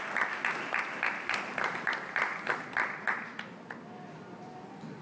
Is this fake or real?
real